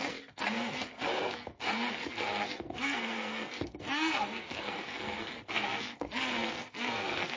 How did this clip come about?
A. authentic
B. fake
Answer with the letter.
B